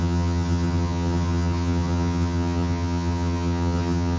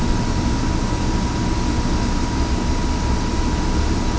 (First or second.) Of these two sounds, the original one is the second